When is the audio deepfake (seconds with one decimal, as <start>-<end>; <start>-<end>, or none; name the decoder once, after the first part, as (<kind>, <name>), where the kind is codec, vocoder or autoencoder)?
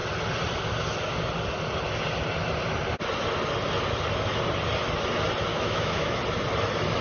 5.5-6.2 (autoencoder, DAC-VAE)